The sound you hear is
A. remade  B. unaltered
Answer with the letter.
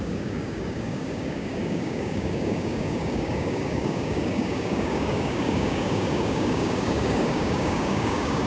A